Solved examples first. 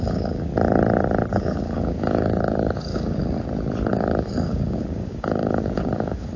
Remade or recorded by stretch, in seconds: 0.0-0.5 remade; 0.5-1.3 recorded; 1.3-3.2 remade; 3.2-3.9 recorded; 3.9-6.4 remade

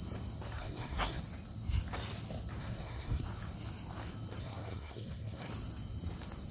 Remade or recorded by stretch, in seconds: 0.0-0.6 recorded; 0.6-1.2 remade; 1.2-2.6 recorded; 2.6-3.2 remade; 3.2-4.4 recorded; 4.4-5.5 remade; 5.5-6.5 recorded